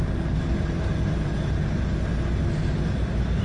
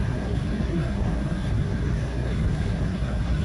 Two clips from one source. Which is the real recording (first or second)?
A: first